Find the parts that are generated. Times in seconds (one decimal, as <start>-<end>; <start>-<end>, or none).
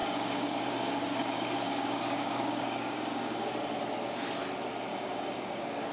0.0-3.5; 4.9-5.9